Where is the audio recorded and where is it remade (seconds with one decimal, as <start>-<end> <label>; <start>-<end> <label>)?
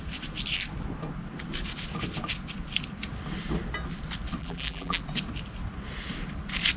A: 0.0-4.4 recorded; 4.4-5.0 remade; 5.0-6.8 recorded